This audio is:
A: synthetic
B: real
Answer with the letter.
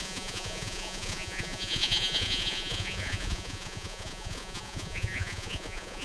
A